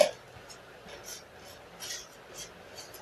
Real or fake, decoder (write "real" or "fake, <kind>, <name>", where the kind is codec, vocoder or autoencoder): real